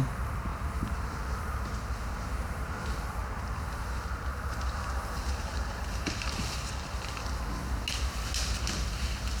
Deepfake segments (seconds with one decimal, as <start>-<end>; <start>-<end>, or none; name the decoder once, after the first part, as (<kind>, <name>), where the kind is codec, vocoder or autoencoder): 0.5-2.6 (vocoder, BigVGAN v2); 3.2-7.2